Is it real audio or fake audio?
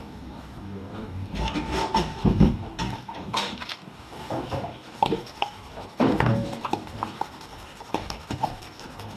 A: fake